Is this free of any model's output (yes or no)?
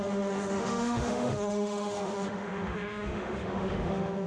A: no